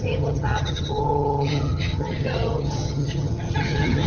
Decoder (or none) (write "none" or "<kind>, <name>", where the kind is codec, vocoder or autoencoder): vocoder, HiFi-GAN